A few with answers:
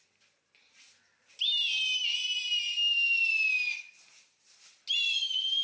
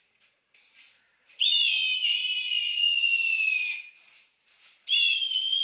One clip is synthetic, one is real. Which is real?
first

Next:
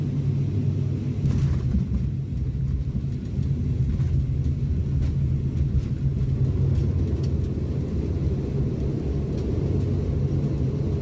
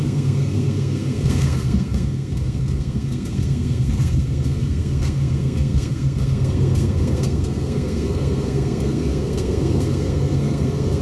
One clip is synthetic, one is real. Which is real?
first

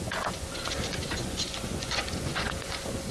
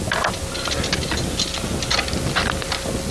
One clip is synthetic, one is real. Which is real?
second